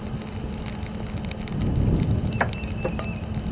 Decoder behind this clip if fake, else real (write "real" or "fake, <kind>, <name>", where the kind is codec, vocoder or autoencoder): real